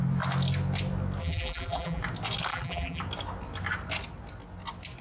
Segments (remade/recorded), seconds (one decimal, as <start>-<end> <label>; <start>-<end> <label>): 0.0-1.2 recorded; 1.2-2.0 remade; 2.0-2.5 recorded; 2.5-3.0 remade; 3.0-5.0 recorded